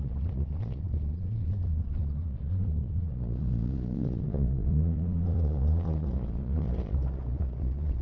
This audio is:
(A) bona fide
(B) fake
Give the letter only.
B